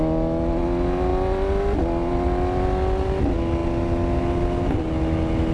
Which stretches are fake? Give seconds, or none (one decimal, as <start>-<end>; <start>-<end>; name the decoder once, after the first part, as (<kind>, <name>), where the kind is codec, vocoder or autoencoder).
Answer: none